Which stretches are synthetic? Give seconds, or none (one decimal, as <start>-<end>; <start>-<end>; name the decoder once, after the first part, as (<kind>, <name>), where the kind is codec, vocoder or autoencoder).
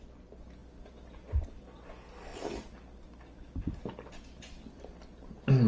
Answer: none